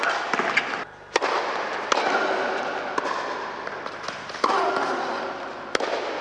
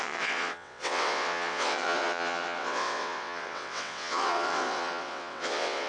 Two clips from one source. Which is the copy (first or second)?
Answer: second